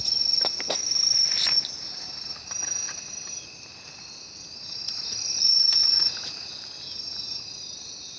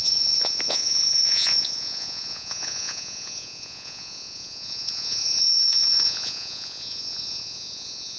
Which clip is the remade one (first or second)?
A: second